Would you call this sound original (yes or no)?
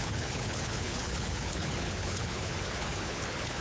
no